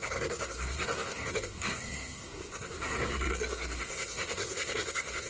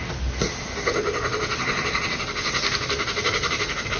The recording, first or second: second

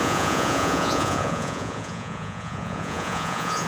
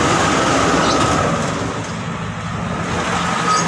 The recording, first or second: second